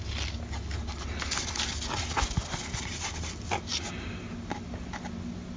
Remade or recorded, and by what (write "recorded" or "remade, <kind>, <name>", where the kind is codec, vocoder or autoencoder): recorded